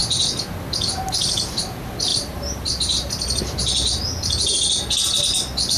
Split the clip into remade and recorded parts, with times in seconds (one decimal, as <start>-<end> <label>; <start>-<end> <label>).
0.0-2.1 recorded; 2.1-3.4 remade; 3.4-5.8 recorded